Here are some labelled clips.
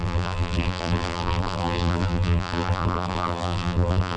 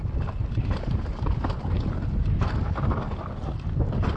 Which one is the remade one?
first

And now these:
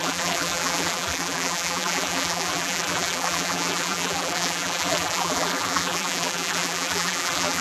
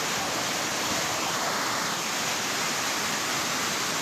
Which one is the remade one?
first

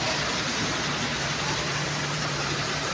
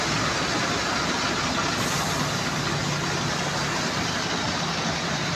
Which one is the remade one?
first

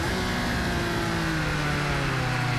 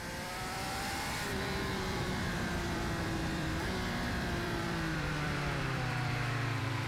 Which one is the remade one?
second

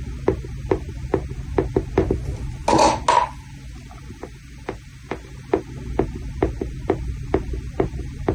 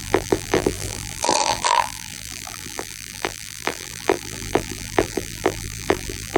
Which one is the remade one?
second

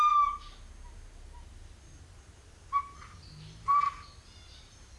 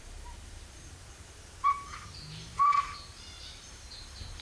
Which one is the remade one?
second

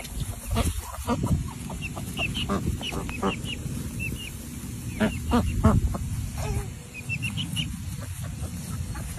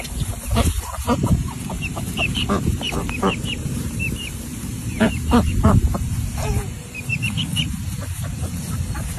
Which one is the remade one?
second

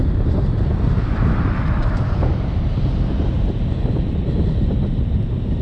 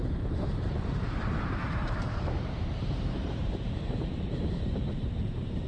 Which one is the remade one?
second